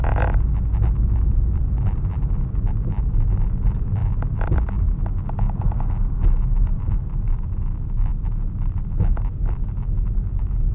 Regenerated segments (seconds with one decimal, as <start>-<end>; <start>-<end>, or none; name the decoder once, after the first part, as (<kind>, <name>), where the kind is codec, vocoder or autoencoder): 1.5-2.0 (vocoder, BigVGAN v2); 4.0-4.7; 8.1-9.0